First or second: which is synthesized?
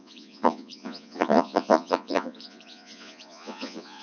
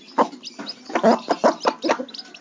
first